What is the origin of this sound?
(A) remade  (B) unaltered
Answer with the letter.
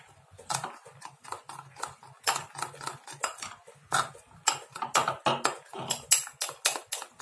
B